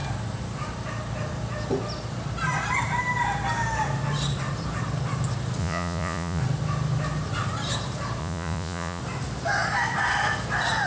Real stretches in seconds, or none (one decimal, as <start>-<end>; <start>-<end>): 0.0-5.6; 6.4-8.2; 9.0-10.9